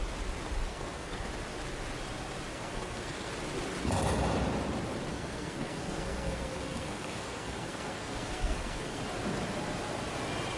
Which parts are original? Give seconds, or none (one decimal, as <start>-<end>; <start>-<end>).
0.0-0.7; 1.3-2.5; 3.3-5.1; 9.0-10.6